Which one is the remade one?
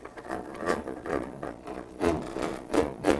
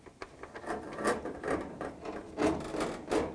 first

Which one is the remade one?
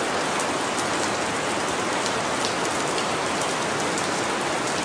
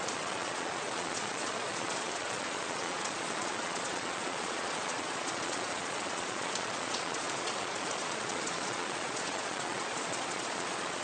second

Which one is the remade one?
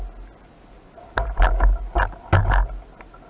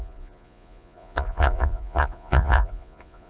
second